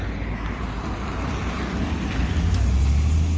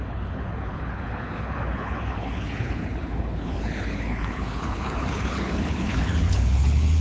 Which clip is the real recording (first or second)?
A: first